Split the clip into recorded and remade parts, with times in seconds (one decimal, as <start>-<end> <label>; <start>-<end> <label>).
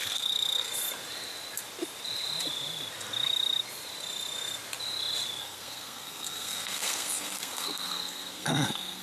0.0-0.7 remade; 0.7-5.4 recorded; 5.4-9.0 remade